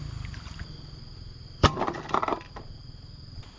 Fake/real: real